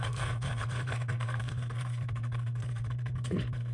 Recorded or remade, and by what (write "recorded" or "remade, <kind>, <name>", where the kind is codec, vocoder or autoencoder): remade, codec, SNAC